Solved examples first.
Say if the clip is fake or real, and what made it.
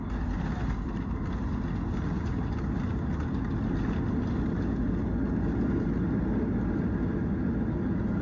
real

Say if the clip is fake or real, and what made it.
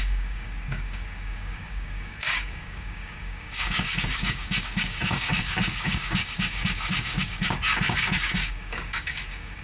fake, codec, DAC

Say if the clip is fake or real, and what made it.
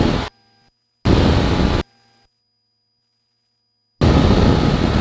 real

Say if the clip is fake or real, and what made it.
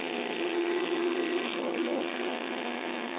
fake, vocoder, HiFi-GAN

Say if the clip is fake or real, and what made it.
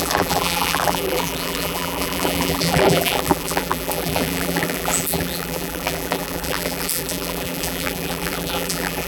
fake, vocoder, BigVGAN v2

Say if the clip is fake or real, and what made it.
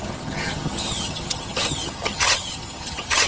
fake, vocoder, HiFi-GAN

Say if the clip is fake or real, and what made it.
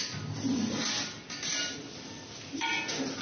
real